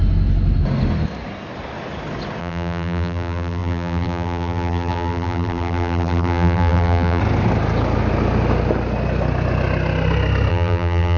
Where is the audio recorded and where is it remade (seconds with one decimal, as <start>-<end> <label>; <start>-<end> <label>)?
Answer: 0.0-2.4 recorded; 2.4-7.2 remade; 7.2-10.5 recorded; 10.5-11.2 remade